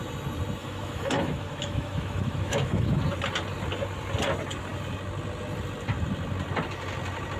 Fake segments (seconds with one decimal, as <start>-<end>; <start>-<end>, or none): 0.6-3.0